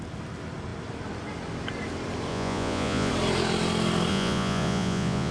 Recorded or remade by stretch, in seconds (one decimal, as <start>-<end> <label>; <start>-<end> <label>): 0.0-2.3 recorded; 2.3-3.1 remade; 3.1-4.1 recorded; 4.1-5.3 remade